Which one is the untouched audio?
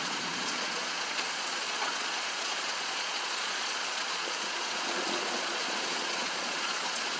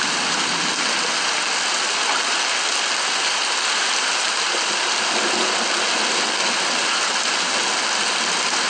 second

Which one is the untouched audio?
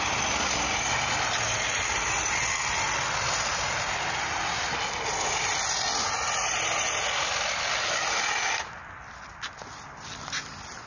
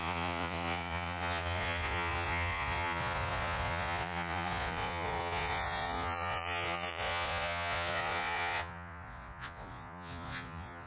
first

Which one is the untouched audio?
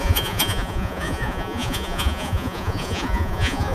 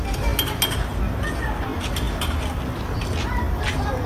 second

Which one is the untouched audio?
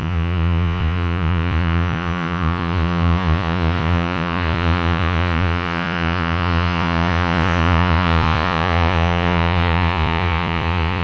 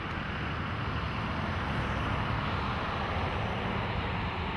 second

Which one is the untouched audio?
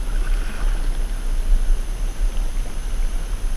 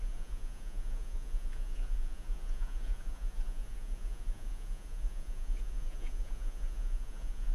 first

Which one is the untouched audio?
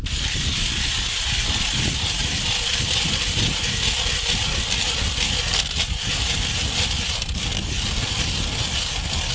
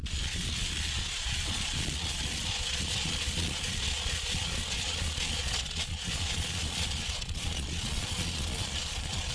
first